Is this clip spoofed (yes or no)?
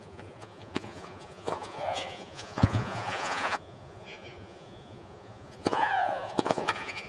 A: yes